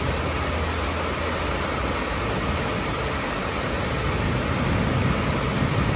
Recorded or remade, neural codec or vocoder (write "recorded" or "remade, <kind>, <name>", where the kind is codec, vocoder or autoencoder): recorded